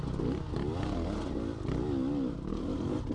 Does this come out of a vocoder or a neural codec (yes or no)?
no